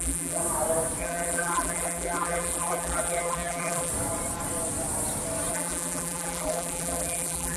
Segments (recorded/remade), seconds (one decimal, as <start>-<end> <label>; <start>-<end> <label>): 0.0-0.4 remade; 0.4-1.0 recorded; 1.0-3.9 remade; 3.9-5.5 recorded; 5.5-7.6 remade